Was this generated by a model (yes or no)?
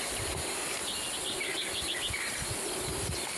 no